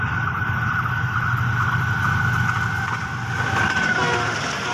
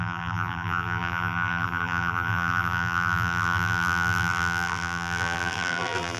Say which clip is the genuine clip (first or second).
first